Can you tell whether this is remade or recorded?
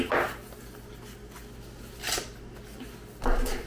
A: recorded